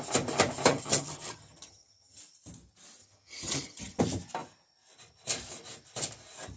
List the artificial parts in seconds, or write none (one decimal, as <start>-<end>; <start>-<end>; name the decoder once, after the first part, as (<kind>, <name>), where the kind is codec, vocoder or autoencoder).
0.7-2.2 (vocoder, HiFi-GAN); 3.0-4.0